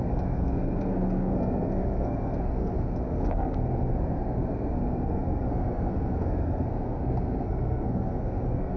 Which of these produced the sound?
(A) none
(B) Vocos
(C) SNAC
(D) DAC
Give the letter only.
C